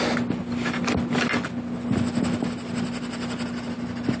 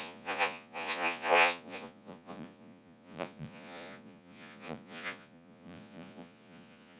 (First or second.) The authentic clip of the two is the first